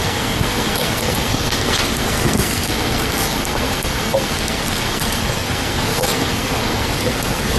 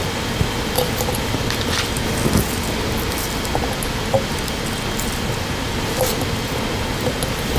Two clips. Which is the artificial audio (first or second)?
first